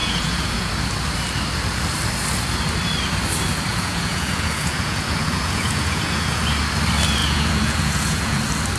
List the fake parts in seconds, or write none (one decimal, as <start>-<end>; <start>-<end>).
0.0-0.7; 3.7-6.4; 7.2-8.4